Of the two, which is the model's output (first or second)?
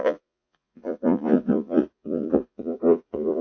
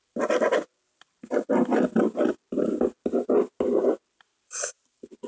first